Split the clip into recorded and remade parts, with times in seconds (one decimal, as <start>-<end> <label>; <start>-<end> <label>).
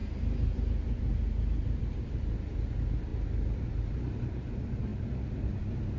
0.0-6.0 recorded